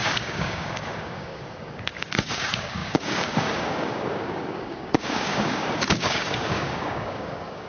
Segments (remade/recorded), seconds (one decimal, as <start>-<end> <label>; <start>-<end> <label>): 0.0-7.7 remade